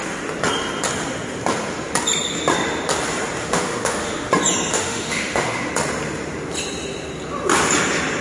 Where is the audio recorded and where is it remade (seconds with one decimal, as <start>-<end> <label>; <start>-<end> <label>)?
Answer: 0.0-3.4 recorded; 3.4-4.3 remade; 4.3-4.7 recorded; 4.7-5.7 remade; 5.7-8.2 recorded